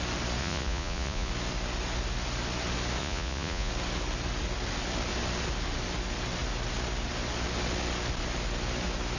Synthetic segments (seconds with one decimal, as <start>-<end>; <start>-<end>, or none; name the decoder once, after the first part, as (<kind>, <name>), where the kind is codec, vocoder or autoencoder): 0.4-1.3 (vocoder, Vocos); 3.0-3.7